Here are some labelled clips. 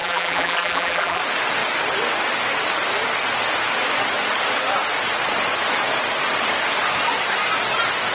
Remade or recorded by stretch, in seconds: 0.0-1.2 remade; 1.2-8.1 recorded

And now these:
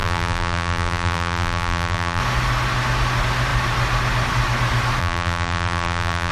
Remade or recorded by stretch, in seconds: 0.0-2.2 remade; 2.2-5.0 recorded; 5.0-6.3 remade

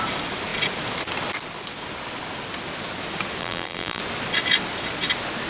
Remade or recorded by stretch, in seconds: 0.0-3.4 recorded; 3.4-4.0 remade; 4.0-5.5 recorded

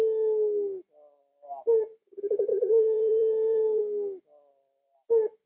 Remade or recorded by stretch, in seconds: 0.0-2.5 recorded; 2.5-3.8 remade; 3.8-5.5 recorded

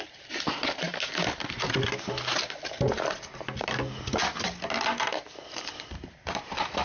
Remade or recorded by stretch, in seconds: 0.0-0.9 remade; 0.9-5.0 recorded; 5.0-6.8 remade